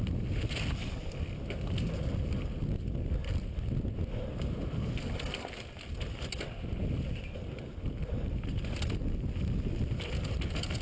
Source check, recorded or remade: recorded